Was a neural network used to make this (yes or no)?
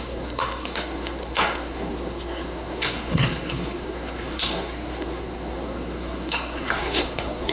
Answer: yes